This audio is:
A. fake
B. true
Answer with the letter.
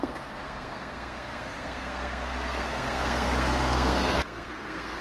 A